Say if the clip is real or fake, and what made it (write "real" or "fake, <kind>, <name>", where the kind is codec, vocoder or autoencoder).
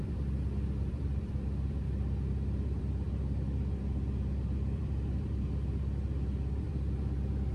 fake, vocoder, BigVGAN v2